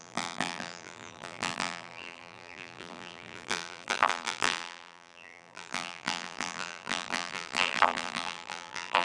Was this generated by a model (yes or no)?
yes